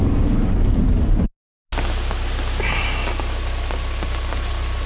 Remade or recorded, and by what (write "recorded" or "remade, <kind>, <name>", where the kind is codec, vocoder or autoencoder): recorded